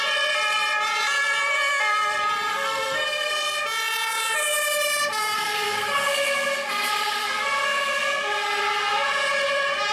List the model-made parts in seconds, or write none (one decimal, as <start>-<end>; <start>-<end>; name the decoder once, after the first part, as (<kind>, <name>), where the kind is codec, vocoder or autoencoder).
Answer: 2.5-3.3 (codec, SNAC); 5.2-8.6